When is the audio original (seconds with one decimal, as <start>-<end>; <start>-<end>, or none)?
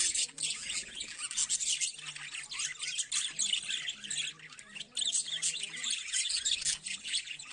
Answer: 1.4-5.2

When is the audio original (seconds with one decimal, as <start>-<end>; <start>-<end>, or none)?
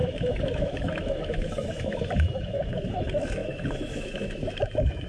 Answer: none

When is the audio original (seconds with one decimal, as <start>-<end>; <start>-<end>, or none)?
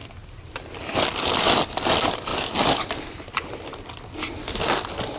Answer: 0.0-5.2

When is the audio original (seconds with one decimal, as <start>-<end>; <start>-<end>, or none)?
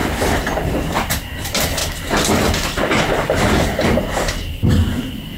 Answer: 1.8-3.0